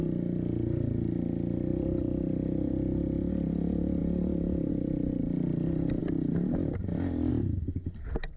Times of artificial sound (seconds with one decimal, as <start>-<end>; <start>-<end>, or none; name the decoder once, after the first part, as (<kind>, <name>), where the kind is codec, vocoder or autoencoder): 1.7-3.3 (vocoder, BigVGAN v2)